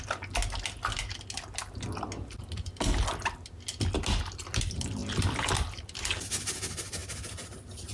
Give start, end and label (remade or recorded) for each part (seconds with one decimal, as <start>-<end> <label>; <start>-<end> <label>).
0.0-7.9 recorded